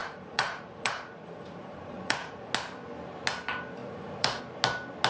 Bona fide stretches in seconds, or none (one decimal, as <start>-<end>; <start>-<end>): 2.5-3.8; 4.4-5.1